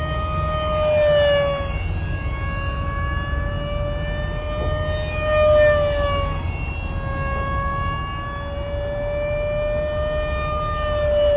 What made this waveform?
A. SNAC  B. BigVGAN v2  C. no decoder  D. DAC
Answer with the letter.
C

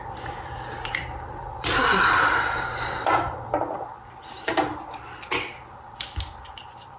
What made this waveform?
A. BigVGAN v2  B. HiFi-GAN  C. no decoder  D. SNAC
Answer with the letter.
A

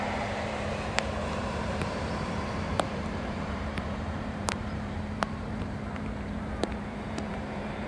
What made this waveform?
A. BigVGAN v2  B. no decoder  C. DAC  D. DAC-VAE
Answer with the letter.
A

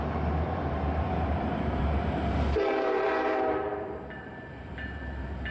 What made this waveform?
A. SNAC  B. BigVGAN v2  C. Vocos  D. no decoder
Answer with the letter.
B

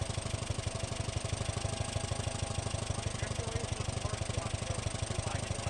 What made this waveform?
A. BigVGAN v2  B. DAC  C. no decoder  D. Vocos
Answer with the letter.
C